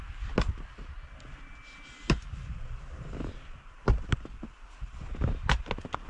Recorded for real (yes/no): yes